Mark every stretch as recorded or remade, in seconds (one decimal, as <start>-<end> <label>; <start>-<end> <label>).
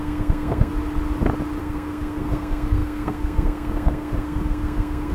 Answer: 0.0-0.7 remade; 0.7-1.6 recorded; 1.6-5.1 remade